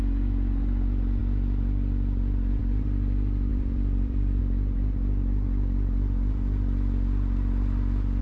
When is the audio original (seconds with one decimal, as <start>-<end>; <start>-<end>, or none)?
0.0-3.5; 4.4-8.2